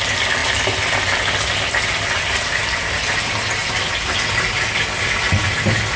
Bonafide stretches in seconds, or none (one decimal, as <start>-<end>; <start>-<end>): 0.0-6.0